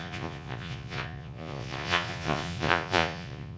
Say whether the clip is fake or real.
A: fake